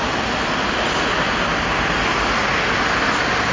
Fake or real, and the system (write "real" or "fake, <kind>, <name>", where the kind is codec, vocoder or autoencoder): real